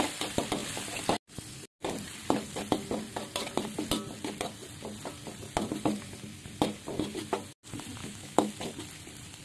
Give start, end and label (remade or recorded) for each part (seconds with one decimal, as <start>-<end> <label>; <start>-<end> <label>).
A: 0.0-8.0 recorded; 8.0-8.5 remade; 8.5-9.4 recorded